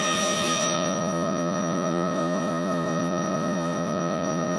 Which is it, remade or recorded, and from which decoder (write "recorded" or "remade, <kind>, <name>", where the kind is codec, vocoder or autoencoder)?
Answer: remade, vocoder, Vocos